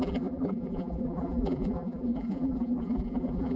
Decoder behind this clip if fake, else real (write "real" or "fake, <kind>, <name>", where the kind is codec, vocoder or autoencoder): fake, vocoder, BigVGAN v2